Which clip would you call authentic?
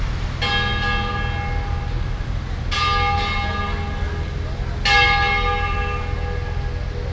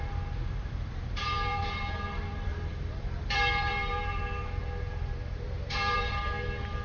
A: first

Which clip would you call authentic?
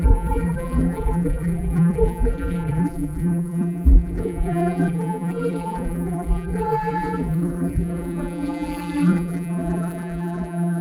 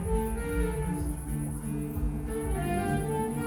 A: second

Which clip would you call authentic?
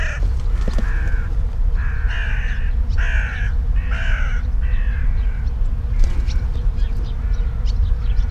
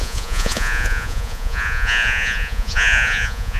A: first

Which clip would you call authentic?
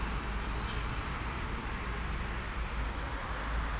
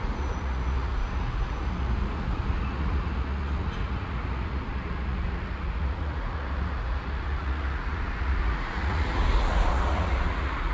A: first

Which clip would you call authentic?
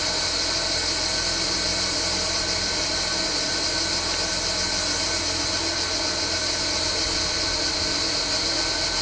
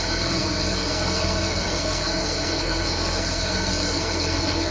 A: first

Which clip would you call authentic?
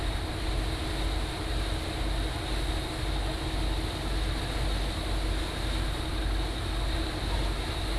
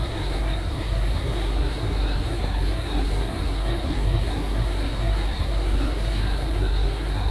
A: first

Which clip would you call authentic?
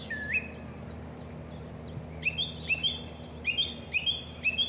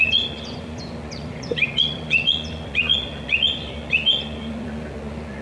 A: first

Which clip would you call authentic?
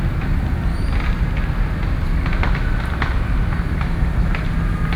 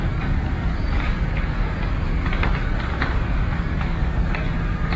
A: first